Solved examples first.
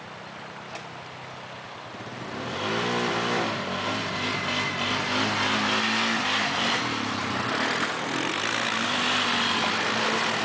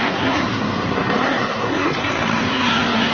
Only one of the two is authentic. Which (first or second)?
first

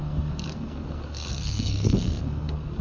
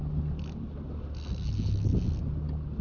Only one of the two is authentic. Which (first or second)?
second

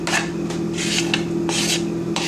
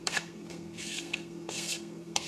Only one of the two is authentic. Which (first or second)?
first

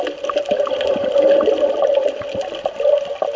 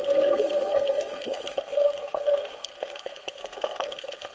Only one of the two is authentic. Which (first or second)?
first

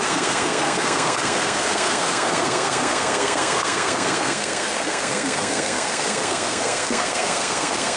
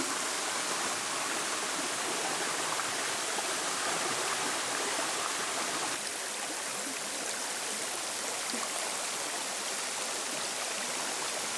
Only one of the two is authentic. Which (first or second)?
second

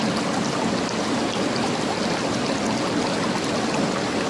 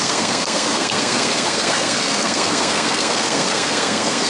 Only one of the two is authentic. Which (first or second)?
first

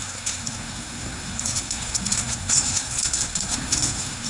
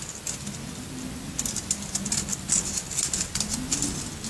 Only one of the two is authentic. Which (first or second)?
second